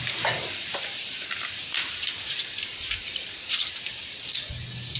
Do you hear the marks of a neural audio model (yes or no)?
yes